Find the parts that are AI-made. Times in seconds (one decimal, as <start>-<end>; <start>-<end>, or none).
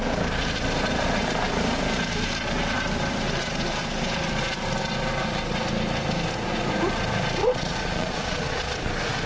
7.4-8.9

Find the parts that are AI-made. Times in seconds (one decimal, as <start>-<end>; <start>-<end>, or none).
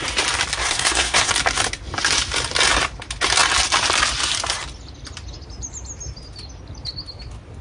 0.6-1.3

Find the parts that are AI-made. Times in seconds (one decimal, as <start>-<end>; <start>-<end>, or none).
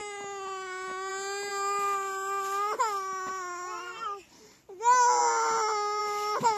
none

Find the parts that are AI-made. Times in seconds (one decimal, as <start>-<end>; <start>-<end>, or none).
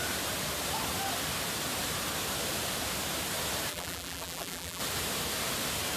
3.7-4.8